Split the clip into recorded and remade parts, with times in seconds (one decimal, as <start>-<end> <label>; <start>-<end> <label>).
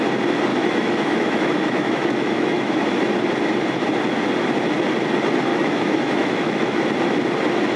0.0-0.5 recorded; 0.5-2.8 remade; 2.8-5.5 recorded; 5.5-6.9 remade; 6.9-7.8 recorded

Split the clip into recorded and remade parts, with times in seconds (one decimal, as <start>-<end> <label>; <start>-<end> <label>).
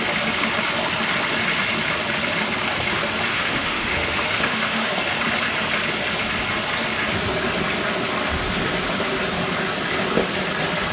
0.0-3.3 recorded; 3.3-4.9 remade; 4.9-10.9 recorded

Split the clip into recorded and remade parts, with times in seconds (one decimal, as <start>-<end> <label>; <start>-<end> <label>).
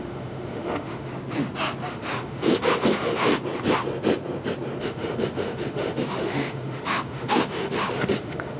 0.0-1.1 remade; 1.1-1.9 recorded; 1.9-3.3 remade; 3.3-4.8 recorded; 4.8-8.6 remade